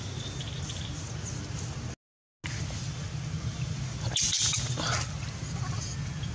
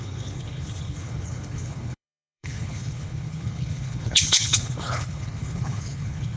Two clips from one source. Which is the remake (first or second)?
second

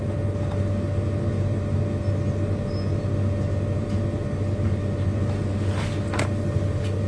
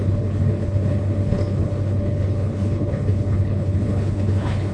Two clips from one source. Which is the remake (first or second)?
second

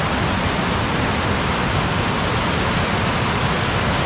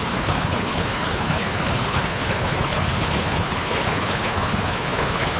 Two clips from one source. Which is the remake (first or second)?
second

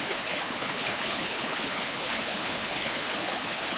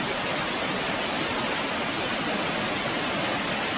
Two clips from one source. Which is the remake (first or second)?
first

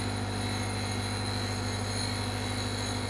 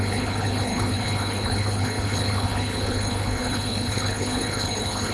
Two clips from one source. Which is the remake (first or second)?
second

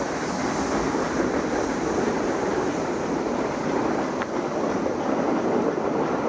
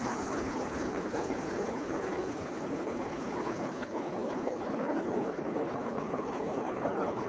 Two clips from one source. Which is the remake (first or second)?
second